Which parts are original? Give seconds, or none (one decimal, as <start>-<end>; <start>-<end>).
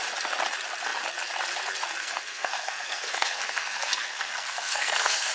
0.0-2.0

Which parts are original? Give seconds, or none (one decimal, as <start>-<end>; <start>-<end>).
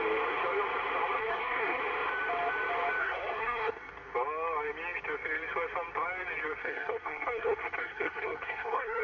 0.0-1.2; 1.8-3.0; 3.9-6.6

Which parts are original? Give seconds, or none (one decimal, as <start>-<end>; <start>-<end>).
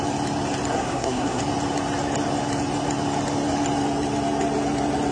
0.0-0.7; 1.4-5.1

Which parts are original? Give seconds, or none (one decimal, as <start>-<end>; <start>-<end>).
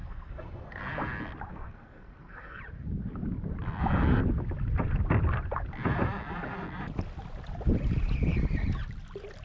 0.8-1.5; 2.6-9.4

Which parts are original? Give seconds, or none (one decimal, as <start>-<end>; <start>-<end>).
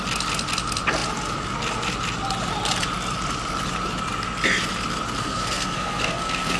0.0-5.2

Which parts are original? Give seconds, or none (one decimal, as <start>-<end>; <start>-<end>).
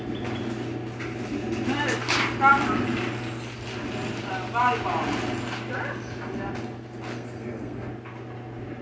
0.0-7.1; 7.9-8.8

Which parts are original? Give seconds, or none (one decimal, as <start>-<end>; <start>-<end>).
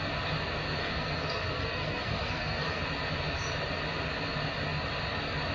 0.0-0.8; 2.8-5.5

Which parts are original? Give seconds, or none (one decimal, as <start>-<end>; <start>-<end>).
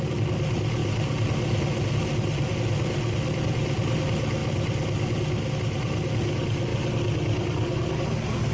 0.0-8.5